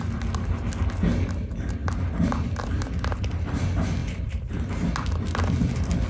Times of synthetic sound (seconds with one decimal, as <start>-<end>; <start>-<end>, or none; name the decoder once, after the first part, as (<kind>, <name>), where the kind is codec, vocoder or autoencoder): 4.0-4.7 (vocoder, BigVGAN v2)